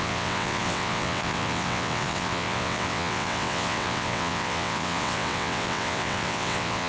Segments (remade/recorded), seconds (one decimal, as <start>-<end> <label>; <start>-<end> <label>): 0.0-6.9 remade